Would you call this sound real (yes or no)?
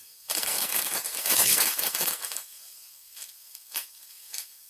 no